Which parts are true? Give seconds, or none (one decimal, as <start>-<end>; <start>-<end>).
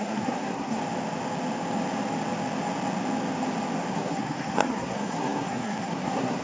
0.8-3.9